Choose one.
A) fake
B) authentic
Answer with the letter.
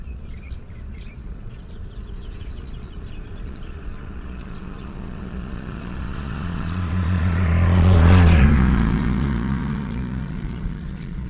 A